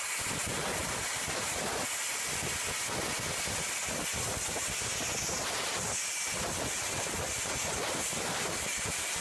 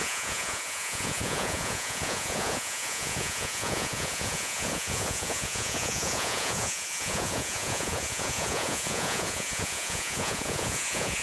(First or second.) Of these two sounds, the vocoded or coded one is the second